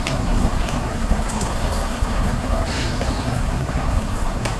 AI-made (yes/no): yes